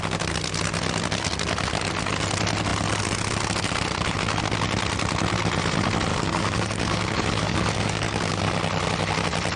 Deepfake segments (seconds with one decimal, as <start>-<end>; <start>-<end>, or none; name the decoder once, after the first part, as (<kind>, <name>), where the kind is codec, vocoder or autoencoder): 6.1-8.4 (codec, DAC)